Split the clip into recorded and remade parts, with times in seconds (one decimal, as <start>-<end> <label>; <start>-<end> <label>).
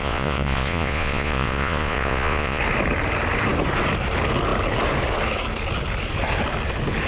0.0-2.6 remade; 2.6-7.1 recorded